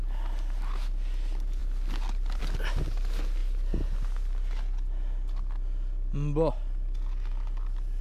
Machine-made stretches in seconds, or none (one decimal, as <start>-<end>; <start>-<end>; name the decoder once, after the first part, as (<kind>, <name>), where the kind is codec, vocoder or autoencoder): none